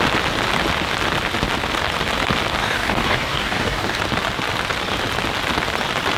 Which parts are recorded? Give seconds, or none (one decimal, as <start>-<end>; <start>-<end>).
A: 0.0-2.6; 4.0-6.2